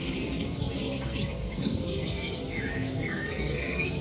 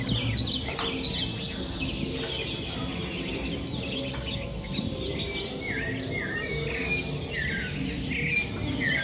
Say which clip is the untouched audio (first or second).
second